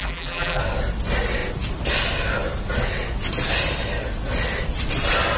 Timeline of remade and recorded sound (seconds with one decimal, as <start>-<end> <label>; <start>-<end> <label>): 0.0-0.6 remade; 0.6-5.4 recorded